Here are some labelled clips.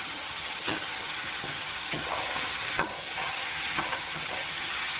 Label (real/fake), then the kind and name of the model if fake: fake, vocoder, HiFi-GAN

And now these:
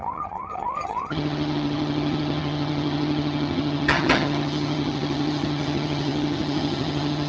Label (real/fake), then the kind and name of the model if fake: fake, vocoder, HiFi-GAN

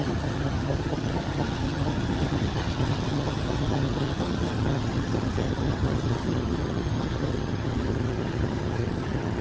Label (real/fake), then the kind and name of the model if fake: fake, vocoder, HiFi-GAN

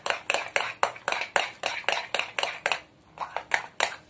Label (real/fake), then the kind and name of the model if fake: real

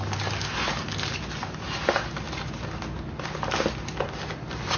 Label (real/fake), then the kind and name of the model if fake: real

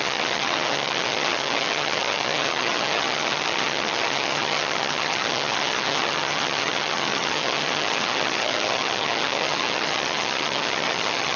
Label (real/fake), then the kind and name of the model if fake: fake, vocoder, HiFi-GAN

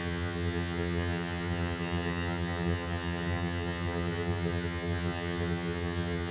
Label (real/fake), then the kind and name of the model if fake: fake, vocoder, HiFi-GAN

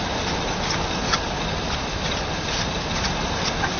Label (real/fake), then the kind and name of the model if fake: real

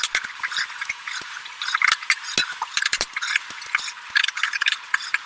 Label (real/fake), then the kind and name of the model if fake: real